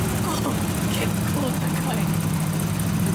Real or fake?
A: real